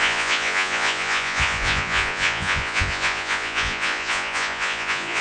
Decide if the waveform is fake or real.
fake